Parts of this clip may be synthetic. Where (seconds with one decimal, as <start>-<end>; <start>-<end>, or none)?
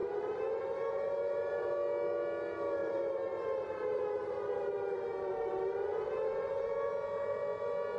0.0-0.6; 2.8-5.5